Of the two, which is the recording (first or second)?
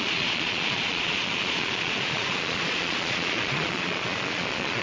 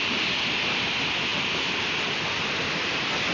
second